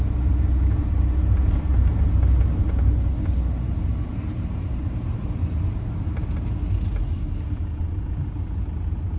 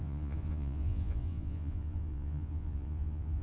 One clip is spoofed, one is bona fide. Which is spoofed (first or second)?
second